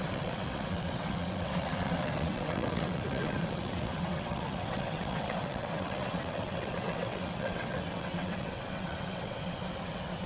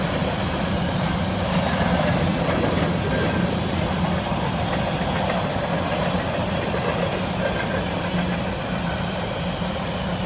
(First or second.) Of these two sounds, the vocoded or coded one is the first